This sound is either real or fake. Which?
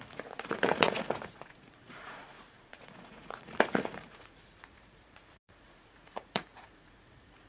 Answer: fake